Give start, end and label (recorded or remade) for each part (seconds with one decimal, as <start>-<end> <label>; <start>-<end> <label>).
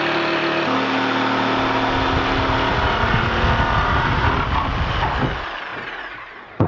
0.0-2.7 recorded; 2.7-3.2 remade; 3.2-3.8 recorded; 3.8-4.3 remade; 4.3-5.7 recorded; 5.7-6.7 remade